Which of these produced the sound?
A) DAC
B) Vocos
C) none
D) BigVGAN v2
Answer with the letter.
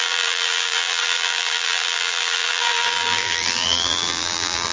D